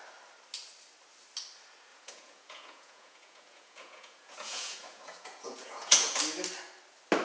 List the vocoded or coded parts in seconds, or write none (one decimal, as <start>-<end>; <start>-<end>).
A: 1.9-6.2